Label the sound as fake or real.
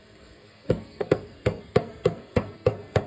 fake